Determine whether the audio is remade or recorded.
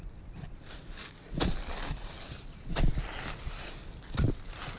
recorded